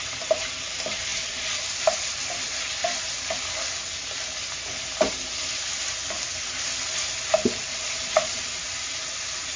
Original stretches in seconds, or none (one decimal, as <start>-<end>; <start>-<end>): 0.0-1.1; 1.6-7.7; 8.5-9.6